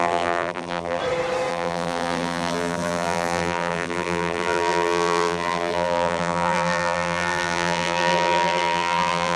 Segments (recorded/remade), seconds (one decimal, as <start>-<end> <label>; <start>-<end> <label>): 0.0-1.0 remade; 1.0-1.5 recorded; 1.5-9.4 remade